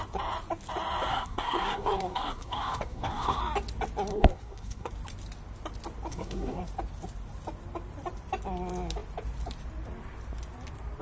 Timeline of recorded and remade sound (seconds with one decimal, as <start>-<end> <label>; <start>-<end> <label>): 0.0-1.1 recorded; 1.1-3.4 remade; 3.4-4.1 recorded; 4.1-4.9 remade; 4.9-6.1 recorded; 6.1-6.6 remade; 6.6-11.0 recorded